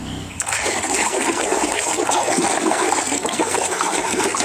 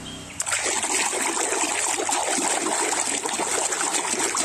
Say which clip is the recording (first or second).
second